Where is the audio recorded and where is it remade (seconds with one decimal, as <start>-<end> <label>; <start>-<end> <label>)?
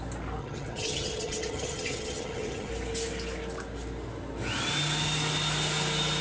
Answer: 0.0-0.4 recorded; 0.4-2.7 remade; 2.7-6.2 recorded